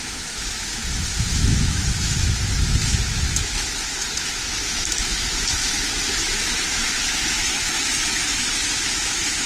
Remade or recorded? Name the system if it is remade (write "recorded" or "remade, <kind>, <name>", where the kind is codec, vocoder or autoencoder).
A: remade, autoencoder, DAC-VAE